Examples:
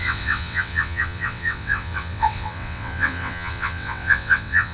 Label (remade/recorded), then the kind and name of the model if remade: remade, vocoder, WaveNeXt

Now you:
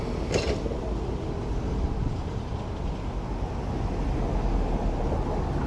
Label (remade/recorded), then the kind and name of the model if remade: recorded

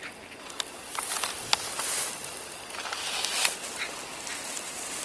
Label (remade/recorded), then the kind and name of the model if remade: recorded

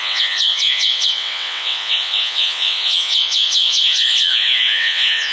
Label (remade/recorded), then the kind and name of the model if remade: remade, vocoder, WaveNeXt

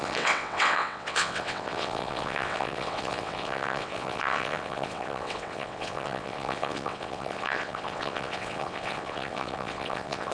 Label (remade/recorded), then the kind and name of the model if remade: remade, vocoder, WaveNeXt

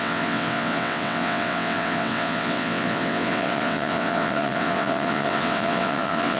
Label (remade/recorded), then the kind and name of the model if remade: remade, vocoder, WaveNeXt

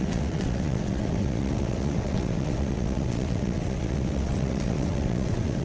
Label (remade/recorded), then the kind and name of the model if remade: remade, vocoder, WaveNeXt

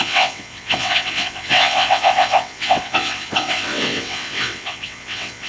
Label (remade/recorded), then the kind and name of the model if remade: remade, vocoder, WaveNeXt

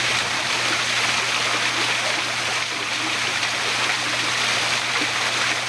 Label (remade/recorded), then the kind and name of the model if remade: recorded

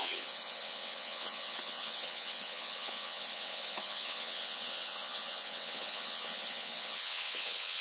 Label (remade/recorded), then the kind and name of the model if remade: remade, vocoder, WaveNeXt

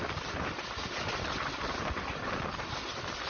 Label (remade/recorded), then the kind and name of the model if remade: recorded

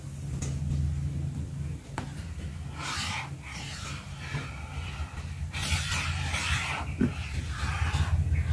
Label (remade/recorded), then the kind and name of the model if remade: recorded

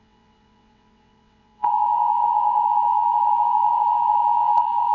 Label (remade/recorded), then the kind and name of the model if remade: remade, vocoder, WaveNeXt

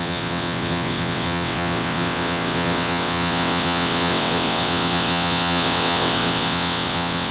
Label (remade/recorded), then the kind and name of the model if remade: remade, vocoder, WaveNeXt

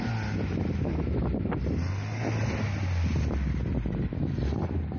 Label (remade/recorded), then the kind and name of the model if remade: recorded